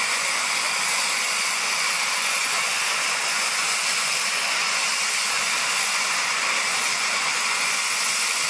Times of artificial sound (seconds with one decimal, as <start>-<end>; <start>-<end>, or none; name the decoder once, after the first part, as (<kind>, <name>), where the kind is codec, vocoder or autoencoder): 0.0-8.5 (vocoder, Vocos)